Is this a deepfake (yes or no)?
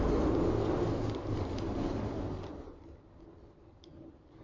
no